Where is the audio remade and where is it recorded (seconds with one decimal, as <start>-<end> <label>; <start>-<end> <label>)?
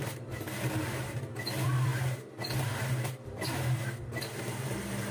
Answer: 0.0-5.1 recorded